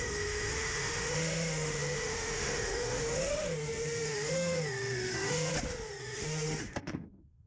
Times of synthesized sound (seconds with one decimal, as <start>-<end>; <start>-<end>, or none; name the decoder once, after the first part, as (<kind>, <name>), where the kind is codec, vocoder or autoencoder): 0.0-5.5 (autoencoder, DAC-VAE); 6.0-7.5